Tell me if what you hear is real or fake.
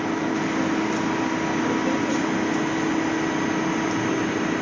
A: real